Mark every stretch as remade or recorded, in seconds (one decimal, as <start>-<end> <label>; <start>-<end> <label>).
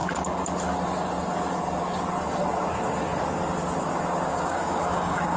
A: 0.0-4.3 recorded; 4.3-5.4 remade